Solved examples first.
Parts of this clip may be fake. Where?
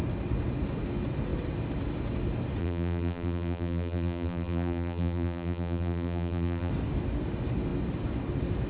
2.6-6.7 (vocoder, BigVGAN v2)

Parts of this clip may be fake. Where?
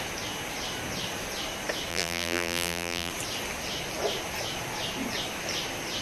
1.9-3.1 (vocoder, BigVGAN v2)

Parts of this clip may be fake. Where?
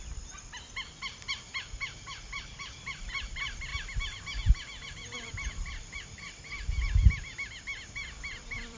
0.0-3.7 (vocoder, BigVGAN v2); 5.3-8.8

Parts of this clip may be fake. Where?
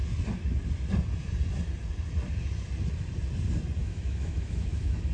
3.8-5.1 (autoencoder, DAC-VAE)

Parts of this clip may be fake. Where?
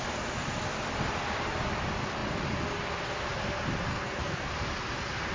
3.9-4.5 (codec, SNAC)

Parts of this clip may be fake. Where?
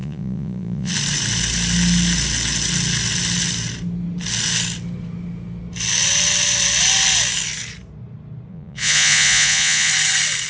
0.0-0.9 (vocoder, Vocos); 8.5-9.9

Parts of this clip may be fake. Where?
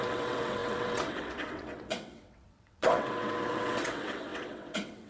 0.0-5.1 (vocoder, WaveNeXt)